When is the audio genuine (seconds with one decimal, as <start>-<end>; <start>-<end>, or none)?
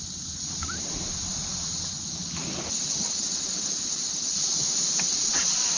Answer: 0.0-5.8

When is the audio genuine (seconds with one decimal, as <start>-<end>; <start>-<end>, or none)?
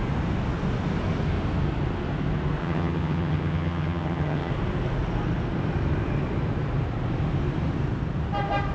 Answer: 0.0-2.6; 4.5-8.7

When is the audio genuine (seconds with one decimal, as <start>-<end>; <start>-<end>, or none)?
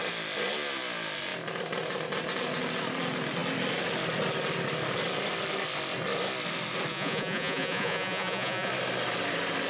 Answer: 0.0-6.9; 8.7-9.7